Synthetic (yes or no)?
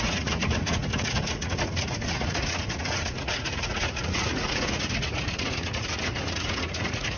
yes